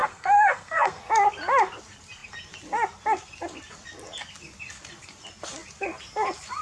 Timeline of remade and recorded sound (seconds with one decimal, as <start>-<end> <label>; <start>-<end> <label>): 0.0-1.0 remade; 1.0-6.6 recorded